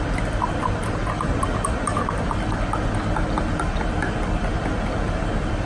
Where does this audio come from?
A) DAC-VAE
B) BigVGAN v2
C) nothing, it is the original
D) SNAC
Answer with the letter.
B